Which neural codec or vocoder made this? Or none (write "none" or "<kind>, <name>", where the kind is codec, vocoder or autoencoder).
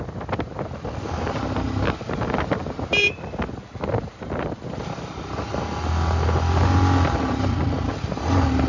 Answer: none